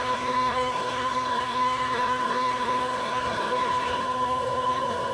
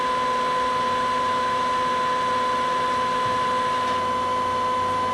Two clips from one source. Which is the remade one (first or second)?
first